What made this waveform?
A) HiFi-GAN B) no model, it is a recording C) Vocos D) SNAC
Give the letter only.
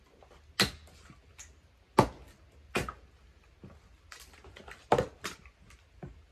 B